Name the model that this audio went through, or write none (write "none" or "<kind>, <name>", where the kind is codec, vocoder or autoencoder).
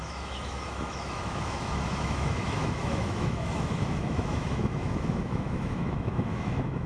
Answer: autoencoder, DAC-VAE